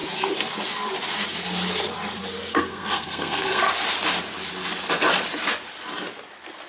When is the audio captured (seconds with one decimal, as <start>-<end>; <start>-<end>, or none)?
0.0-2.5; 3.7-6.7